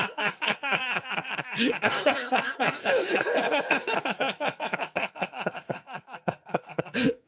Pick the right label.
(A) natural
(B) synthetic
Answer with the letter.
B